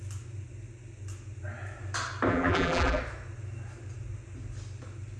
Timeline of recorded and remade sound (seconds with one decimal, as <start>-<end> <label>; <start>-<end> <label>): 0.0-2.3 recorded; 2.3-3.0 remade; 3.0-5.2 recorded